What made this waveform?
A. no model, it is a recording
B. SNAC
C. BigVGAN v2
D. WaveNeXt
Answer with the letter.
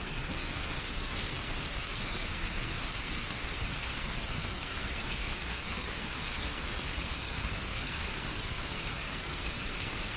B